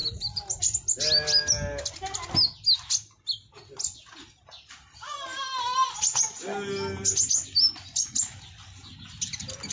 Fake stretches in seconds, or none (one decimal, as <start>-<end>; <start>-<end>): 0.0-0.6; 5.3-5.9